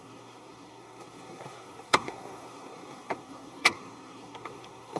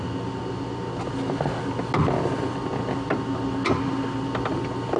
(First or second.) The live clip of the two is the second